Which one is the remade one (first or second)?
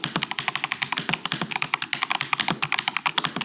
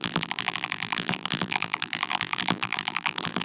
second